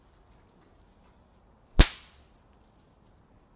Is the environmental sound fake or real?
real